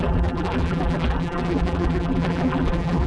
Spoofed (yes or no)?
yes